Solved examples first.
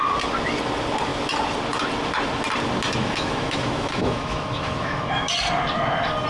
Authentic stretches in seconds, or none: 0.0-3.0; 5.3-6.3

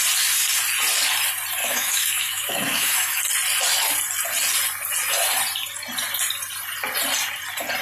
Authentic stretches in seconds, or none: 0.0-1.6; 3.2-7.8